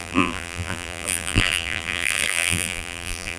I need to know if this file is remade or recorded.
remade